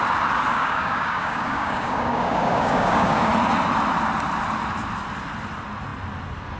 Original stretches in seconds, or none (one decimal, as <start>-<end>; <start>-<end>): 0.0-0.5; 3.3-6.6